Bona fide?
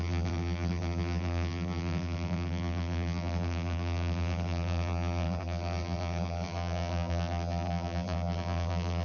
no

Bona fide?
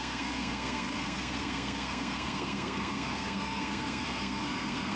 no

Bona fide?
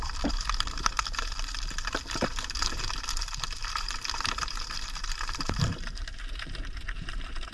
no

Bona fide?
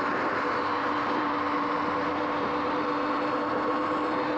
no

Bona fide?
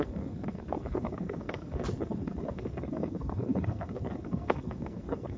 no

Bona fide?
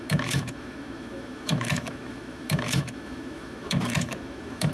no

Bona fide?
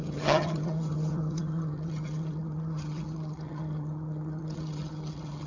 no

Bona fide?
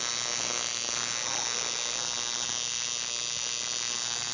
yes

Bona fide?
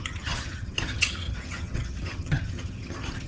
no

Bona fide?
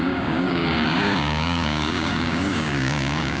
no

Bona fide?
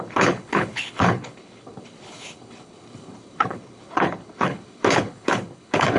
no